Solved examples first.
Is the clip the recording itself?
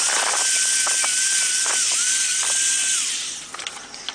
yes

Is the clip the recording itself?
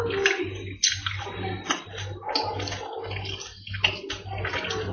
yes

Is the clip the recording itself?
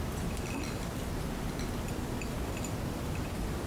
no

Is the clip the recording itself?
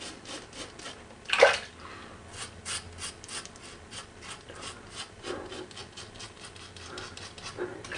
yes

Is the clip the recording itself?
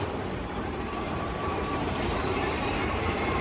no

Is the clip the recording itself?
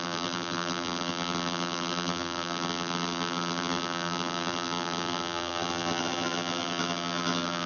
no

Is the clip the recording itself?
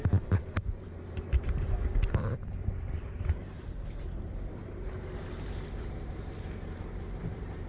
no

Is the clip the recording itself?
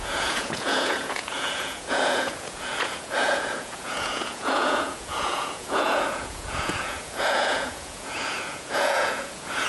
no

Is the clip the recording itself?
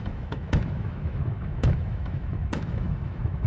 no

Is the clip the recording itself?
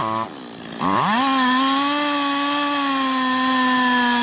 yes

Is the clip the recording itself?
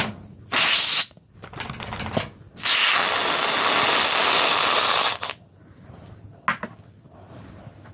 yes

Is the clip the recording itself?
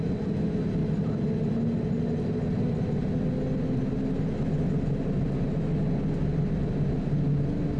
yes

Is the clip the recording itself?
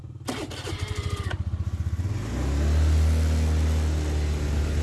yes